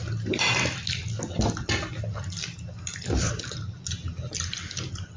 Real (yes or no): yes